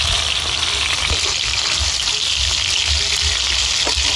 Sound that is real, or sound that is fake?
real